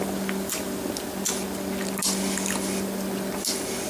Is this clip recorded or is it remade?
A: recorded